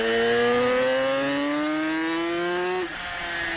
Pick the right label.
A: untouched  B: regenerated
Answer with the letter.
A